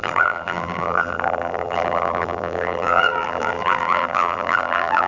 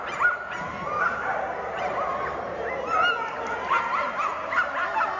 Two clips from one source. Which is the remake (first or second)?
first